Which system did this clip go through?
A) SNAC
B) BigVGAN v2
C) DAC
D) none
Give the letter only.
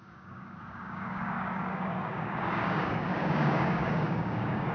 C